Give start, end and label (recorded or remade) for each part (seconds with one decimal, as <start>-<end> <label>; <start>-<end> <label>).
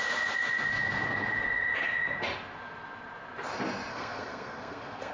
0.0-3.9 recorded; 3.9-5.1 remade